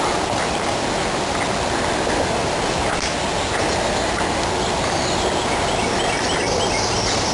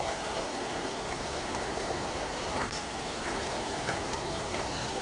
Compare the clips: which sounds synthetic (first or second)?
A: second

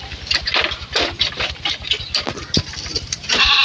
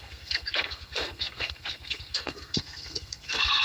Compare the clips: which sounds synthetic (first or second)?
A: second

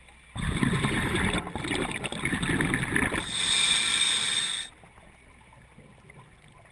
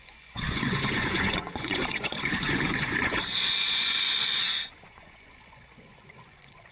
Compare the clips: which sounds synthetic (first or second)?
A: second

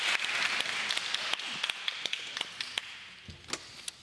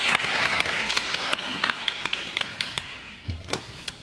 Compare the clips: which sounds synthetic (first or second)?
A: second